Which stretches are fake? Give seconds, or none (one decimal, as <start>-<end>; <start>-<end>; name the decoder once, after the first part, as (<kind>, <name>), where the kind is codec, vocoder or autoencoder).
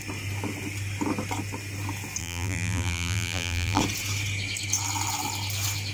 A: 2.2-3.8 (vocoder, BigVGAN v2)